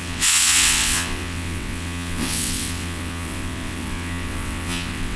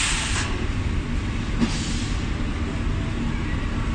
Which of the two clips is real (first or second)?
second